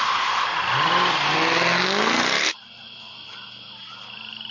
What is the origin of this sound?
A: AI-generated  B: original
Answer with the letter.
B